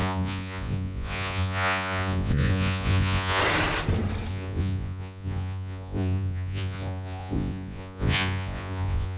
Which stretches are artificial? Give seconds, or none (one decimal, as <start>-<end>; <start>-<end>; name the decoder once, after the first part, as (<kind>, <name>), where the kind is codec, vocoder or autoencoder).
0.0-3.4 (vocoder, Vocos); 4.3-9.2